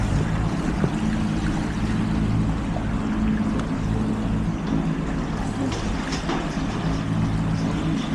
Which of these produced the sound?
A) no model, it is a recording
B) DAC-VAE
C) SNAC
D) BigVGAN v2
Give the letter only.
A